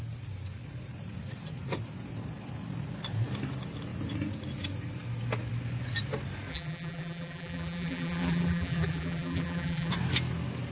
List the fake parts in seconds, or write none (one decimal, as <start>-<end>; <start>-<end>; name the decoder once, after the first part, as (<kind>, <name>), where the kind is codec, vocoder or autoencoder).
6.5-9.9 (vocoder, BigVGAN v2)